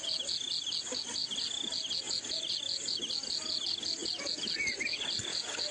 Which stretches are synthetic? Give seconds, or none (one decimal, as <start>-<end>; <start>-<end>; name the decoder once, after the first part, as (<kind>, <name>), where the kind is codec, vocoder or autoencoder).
none